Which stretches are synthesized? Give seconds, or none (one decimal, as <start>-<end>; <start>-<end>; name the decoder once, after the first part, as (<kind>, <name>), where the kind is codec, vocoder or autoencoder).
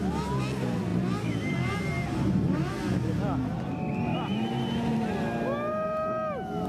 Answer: none